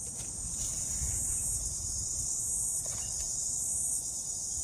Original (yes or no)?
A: no